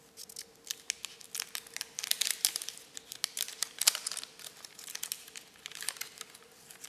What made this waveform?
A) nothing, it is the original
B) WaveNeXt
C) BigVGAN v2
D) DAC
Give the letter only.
A